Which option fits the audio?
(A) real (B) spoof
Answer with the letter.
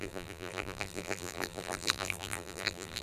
B